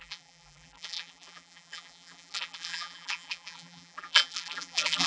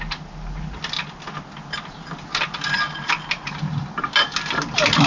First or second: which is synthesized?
first